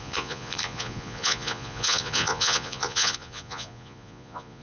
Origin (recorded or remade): remade